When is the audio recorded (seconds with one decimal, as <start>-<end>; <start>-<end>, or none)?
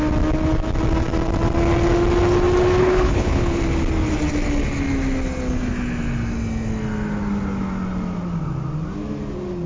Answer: 0.0-2.8; 3.5-9.7